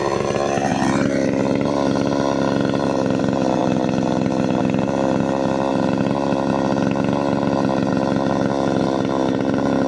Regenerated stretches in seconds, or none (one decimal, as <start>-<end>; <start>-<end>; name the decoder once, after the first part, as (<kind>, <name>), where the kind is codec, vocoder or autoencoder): 0.7-3.2 (vocoder, BigVGAN v2)